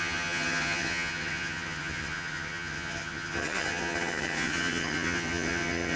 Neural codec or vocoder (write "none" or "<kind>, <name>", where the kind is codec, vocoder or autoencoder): vocoder, HiFi-GAN